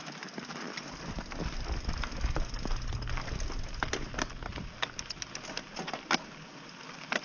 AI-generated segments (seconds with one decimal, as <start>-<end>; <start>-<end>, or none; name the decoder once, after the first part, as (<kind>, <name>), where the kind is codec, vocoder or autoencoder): none